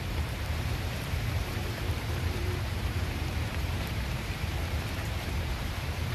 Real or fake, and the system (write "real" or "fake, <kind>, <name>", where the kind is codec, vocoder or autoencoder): fake, vocoder, BigVGAN v2